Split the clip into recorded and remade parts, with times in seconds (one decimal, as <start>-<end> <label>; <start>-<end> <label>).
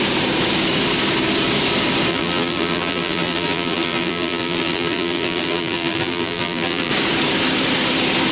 0.0-2.1 recorded; 2.1-6.9 remade; 6.9-8.3 recorded